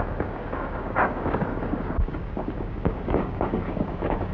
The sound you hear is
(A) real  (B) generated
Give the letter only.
B